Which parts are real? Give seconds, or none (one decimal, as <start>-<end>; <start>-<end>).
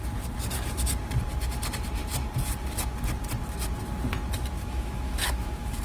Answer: 0.0-4.6